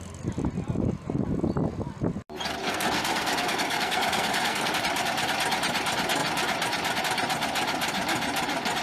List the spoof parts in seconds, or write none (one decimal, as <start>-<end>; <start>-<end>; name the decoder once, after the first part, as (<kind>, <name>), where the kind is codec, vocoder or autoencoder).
2.6-4.7 (codec, SNAC)